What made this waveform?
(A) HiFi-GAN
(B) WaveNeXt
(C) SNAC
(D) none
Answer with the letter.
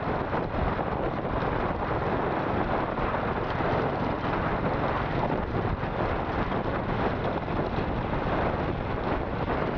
D